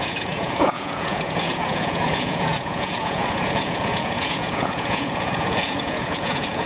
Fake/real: fake